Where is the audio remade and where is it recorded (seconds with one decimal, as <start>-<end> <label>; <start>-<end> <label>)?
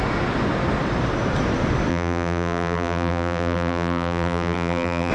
0.0-1.9 recorded; 1.9-5.1 remade